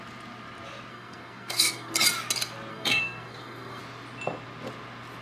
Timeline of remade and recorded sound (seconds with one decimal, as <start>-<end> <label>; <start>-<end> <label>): 0.0-0.9 recorded; 0.9-1.9 remade; 1.9-2.7 recorded; 2.7-3.8 remade; 3.8-5.2 recorded